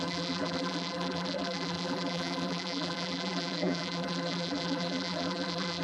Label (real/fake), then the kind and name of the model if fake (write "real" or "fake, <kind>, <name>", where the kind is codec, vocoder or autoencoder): fake, vocoder, BigVGAN v2